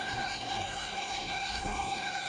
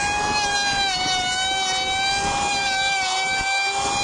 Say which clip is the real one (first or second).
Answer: second